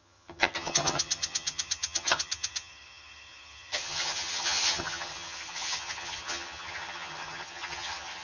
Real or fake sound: fake